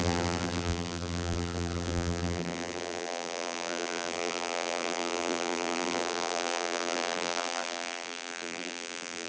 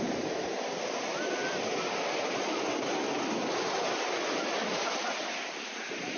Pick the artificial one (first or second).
first